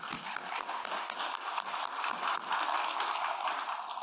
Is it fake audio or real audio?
real